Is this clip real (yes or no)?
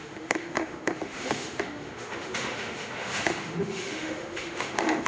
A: no